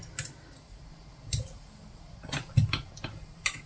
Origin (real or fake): real